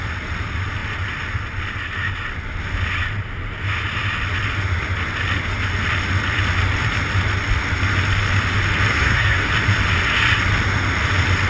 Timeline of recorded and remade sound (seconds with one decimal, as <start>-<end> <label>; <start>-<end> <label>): 0.0-8.9 recorded; 8.9-9.5 remade; 9.5-11.5 recorded